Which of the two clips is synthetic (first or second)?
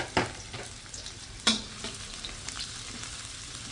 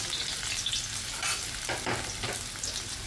first